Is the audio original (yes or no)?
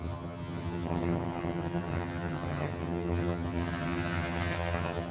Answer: no